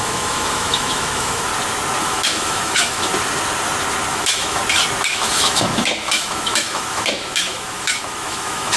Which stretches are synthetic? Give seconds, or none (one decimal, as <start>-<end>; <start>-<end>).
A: 0.0-1.5; 2.0-3.1; 4.1-4.6; 5.1-8.8